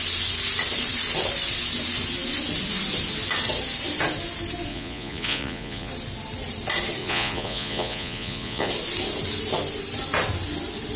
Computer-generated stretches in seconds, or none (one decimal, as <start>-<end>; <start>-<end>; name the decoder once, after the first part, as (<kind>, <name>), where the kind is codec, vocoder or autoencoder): 4.7-5.9 (vocoder, Vocos); 7.0-8.7